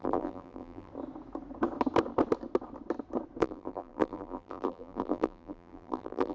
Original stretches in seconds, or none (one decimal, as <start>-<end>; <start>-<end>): 0.9-3.4